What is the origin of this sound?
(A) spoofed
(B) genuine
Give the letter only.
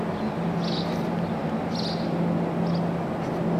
B